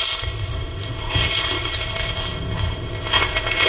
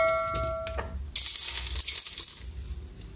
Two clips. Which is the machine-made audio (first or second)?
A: first